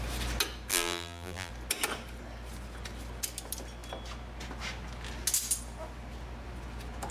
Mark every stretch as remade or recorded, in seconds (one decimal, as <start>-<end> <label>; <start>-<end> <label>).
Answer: 0.0-0.7 recorded; 0.7-1.5 remade; 1.5-7.1 recorded